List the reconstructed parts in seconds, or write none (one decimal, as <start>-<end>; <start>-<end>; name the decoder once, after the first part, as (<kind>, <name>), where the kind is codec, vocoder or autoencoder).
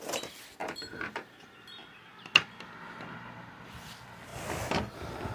0.6-1.5 (vocoder, BigVGAN v2)